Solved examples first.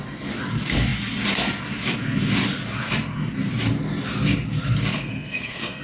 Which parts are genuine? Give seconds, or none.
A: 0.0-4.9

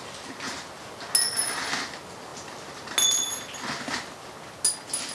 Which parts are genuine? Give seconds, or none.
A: 0.0-5.1

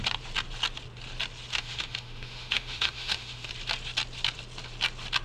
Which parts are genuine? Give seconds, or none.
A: 0.0-1.5; 3.5-5.2

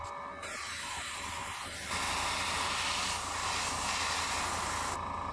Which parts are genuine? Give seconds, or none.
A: 0.0-5.3

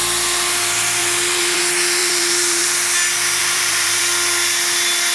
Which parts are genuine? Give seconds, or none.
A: 0.0-1.0; 1.6-2.0; 2.6-3.4; 4.0-5.1